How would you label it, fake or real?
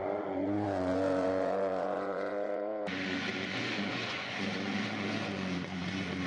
fake